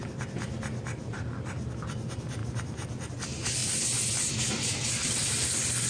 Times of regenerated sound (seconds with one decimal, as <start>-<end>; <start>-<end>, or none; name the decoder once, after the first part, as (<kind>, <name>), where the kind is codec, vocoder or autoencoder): none